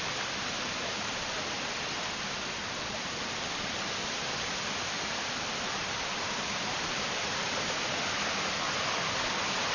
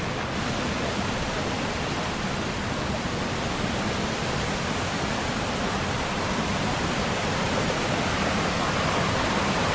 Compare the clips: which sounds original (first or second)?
second